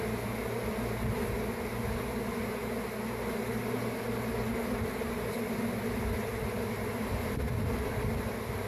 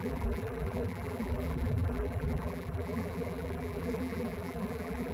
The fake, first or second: second